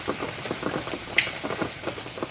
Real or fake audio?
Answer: real